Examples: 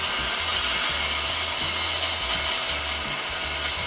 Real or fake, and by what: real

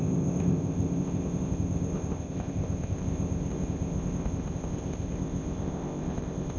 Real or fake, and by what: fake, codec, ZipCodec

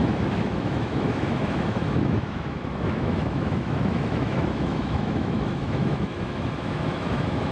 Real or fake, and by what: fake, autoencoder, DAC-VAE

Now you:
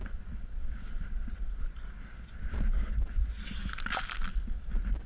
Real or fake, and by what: real